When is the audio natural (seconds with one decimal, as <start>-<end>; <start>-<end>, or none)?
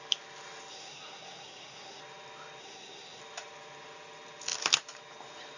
0.0-0.7; 2.0-2.6; 3.2-5.6